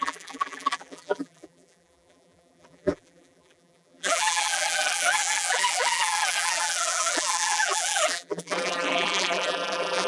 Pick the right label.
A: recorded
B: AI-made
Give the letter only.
B